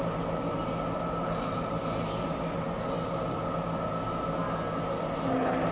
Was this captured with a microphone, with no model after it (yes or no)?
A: yes